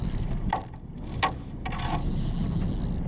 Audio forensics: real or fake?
real